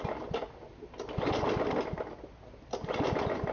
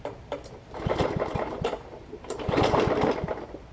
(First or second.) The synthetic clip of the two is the second